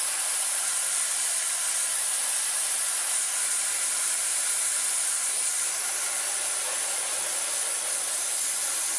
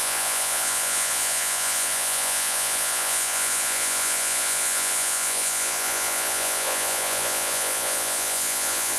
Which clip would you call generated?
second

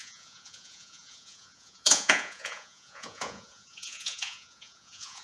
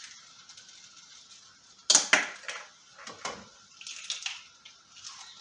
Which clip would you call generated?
first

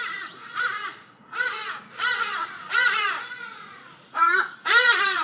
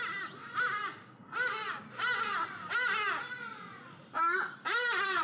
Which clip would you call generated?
first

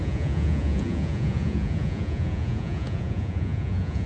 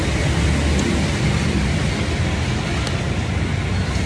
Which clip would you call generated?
first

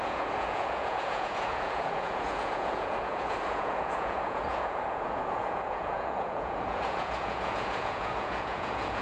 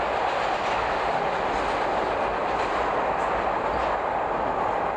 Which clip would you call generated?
first